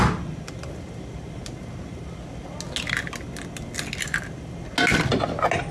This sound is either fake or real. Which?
real